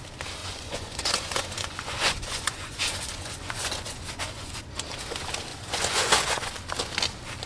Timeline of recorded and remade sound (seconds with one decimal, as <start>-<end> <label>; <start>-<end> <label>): 0.0-0.4 recorded; 0.4-4.6 remade; 4.6-5.5 recorded; 5.5-6.5 remade; 6.5-7.5 recorded

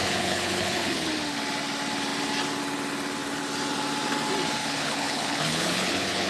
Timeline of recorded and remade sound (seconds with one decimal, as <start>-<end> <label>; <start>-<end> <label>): 0.0-1.1 remade; 1.1-4.6 recorded; 4.6-6.3 remade

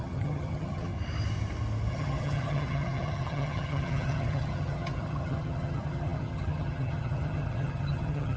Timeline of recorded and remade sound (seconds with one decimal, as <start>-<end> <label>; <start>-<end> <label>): 0.0-0.9 remade; 0.9-1.9 recorded; 1.9-8.4 remade

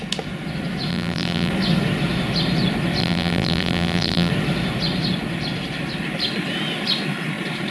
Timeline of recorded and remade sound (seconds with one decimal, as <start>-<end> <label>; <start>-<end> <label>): 0.0-0.9 recorded; 0.9-1.5 remade; 1.5-3.0 recorded; 3.0-4.3 remade; 4.3-7.7 recorded

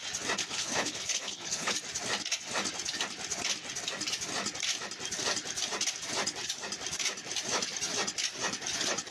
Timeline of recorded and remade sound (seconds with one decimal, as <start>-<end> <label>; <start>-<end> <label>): 0.0-0.4 recorded; 0.4-1.7 remade; 1.7-9.1 recorded

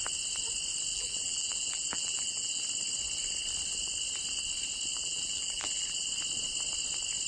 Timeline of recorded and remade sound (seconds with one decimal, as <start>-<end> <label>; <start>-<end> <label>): 0.0-0.9 recorded; 0.9-2.6 remade; 2.6-4.9 recorded; 4.9-6.1 remade; 6.1-7.3 recorded

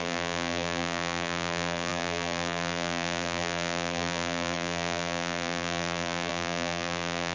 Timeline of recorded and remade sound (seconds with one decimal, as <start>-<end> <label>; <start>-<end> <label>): 0.0-7.3 remade

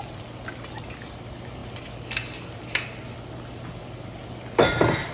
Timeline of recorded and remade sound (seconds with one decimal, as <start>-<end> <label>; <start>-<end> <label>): 0.0-5.1 recorded